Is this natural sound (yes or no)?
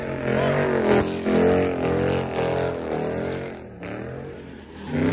yes